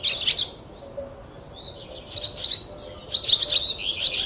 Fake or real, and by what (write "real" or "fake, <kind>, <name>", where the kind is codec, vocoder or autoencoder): real